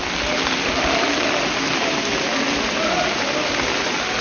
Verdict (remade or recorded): recorded